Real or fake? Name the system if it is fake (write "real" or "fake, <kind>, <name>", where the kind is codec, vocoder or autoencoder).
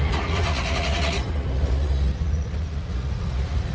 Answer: fake, vocoder, Vocos